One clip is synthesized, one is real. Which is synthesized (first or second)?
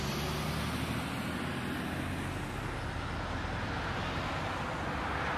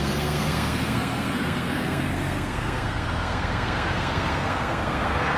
second